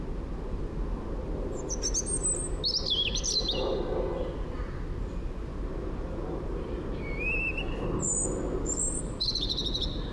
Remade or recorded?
recorded